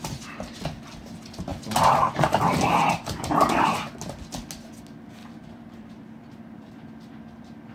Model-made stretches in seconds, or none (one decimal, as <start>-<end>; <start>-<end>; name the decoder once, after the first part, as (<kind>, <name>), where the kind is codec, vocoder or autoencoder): 1.5-3.1 (vocoder, BigVGAN v2); 5.2-6.7